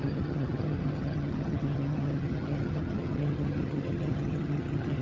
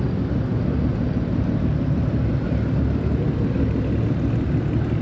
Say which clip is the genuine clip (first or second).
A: second